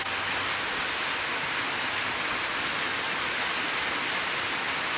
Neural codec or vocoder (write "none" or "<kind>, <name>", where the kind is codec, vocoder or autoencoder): none